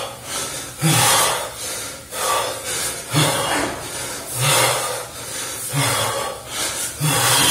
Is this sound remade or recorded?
recorded